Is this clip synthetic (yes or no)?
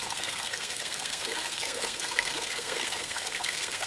yes